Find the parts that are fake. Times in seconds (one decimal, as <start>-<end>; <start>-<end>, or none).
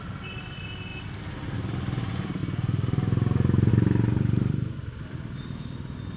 0.0-0.9; 1.6-2.4; 3.7-6.2